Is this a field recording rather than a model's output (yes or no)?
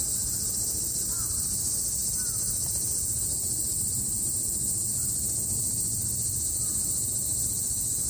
yes